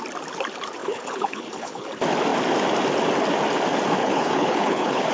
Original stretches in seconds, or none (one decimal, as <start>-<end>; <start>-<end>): 0.0-0.8; 1.9-4.0